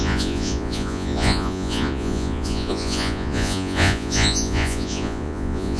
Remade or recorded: remade